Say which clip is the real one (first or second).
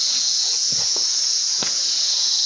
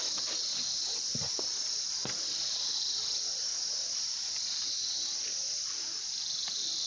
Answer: second